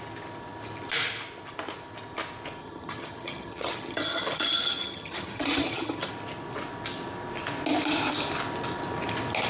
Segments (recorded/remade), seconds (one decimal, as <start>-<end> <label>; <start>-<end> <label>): 0.0-2.6 recorded; 2.6-6.1 remade; 6.1-9.5 recorded